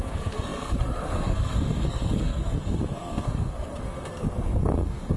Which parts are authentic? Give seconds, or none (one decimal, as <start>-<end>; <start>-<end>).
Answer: none

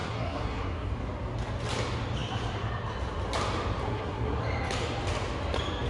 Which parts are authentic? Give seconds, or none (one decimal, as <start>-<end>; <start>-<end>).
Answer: 0.9-3.8; 4.4-5.9

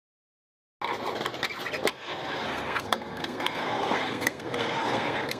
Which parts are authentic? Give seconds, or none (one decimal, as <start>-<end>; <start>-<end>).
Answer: 0.0-1.9

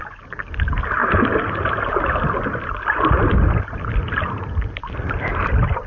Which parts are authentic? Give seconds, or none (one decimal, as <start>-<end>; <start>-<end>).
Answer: 0.0-5.9